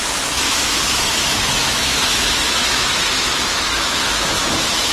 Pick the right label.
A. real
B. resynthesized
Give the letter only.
B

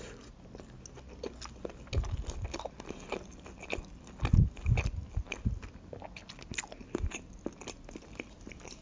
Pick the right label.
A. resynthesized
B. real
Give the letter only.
B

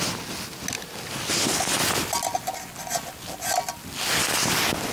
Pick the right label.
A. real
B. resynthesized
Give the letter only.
A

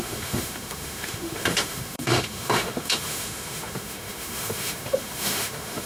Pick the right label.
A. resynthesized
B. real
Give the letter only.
A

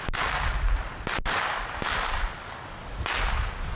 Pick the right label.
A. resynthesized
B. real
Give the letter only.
B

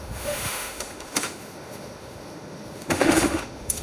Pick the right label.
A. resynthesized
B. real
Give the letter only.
A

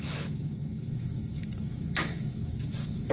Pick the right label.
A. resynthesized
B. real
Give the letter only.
A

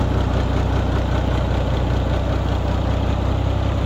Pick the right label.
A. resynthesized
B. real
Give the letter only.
B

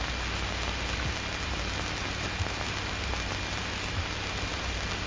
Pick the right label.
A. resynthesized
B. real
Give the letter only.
B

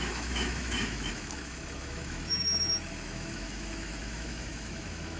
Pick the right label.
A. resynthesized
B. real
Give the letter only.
A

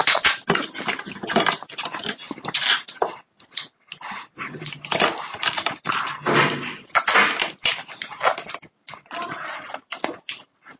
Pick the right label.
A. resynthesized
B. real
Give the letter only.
B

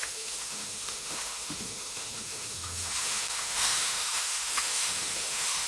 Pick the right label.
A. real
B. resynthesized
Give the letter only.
B